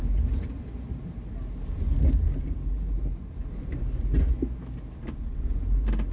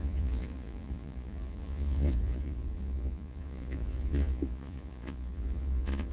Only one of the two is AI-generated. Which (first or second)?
second